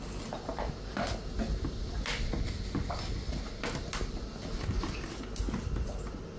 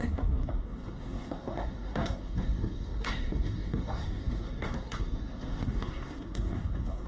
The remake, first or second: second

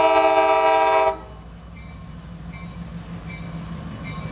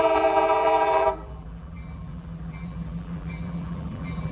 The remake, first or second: second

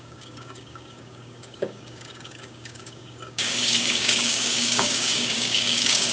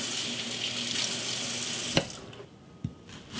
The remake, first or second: first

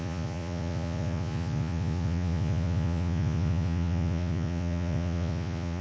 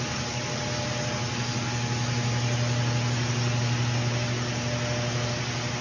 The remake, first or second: first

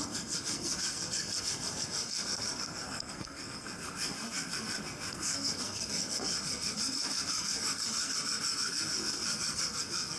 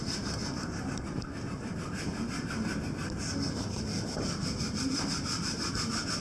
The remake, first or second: first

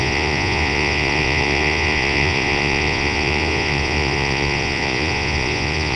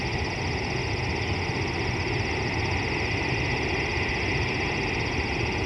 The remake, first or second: first